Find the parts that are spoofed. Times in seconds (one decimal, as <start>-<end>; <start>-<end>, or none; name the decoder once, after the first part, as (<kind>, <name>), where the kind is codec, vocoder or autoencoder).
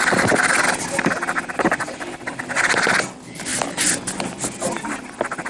none